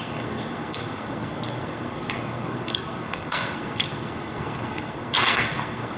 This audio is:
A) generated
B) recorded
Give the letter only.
A